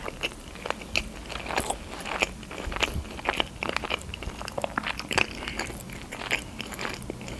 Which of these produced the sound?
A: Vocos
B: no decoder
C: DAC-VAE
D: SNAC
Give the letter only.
B